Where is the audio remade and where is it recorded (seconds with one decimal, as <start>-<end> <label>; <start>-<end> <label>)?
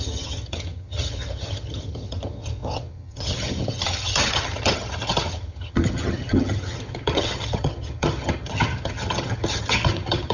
0.0-10.3 remade